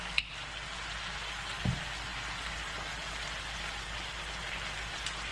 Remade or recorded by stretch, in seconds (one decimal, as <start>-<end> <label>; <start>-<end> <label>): 0.0-5.3 recorded

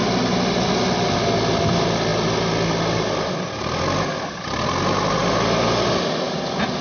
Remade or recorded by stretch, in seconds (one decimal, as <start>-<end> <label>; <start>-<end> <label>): 0.0-6.8 recorded

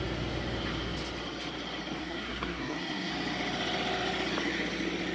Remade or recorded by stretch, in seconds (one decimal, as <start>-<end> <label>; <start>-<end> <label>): 0.0-2.0 recorded; 2.0-3.1 remade; 3.1-5.1 recorded

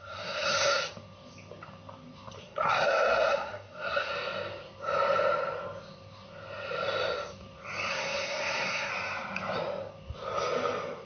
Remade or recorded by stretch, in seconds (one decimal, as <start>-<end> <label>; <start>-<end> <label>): 0.0-0.8 remade; 0.8-2.4 recorded; 2.4-4.1 remade; 4.1-7.9 recorded; 7.9-8.9 remade; 8.9-11.1 recorded

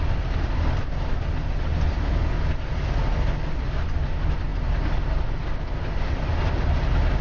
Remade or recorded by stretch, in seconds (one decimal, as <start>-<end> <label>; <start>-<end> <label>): 0.0-7.2 recorded

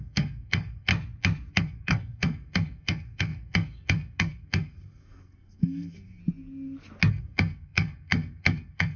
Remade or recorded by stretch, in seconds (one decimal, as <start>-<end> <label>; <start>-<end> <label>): 0.0-0.9 remade; 0.9-1.5 recorded; 1.5-6.2 remade; 6.2-7.1 recorded; 7.1-9.0 remade

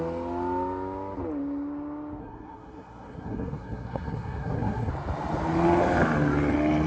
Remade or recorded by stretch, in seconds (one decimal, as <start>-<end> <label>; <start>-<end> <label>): 0.0-2.2 recorded; 2.2-4.9 remade; 4.9-6.9 recorded

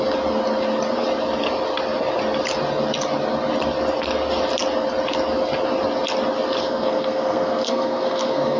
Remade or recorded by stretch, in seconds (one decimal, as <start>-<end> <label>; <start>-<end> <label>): 0.0-6.6 recorded; 6.6-8.6 remade